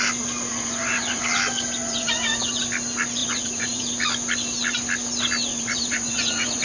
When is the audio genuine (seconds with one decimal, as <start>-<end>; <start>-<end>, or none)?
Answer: 0.0-0.5; 1.2-1.8; 2.6-3.2; 3.8-5.5